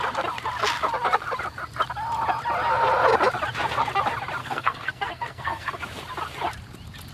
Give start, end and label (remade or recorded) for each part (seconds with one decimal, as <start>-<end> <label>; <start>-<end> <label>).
0.0-4.4 recorded; 4.4-5.8 remade; 5.8-7.1 recorded